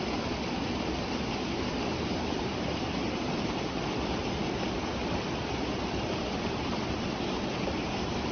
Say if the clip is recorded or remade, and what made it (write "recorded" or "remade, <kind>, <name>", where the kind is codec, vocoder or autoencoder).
remade, vocoder, BigVGAN v2